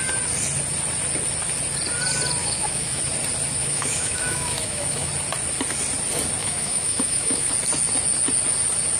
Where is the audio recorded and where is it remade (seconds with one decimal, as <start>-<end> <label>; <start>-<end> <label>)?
0.0-2.4 recorded; 2.4-3.0 remade; 3.0-3.6 recorded; 3.6-5.1 remade; 5.1-6.4 recorded; 6.4-7.5 remade; 7.5-9.0 recorded